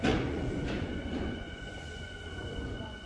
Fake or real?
fake